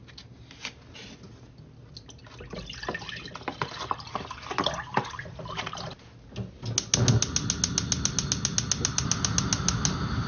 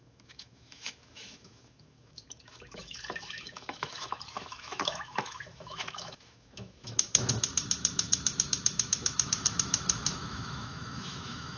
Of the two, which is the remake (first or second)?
second